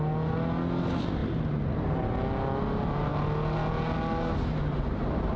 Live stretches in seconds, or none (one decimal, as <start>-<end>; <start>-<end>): 0.0-5.4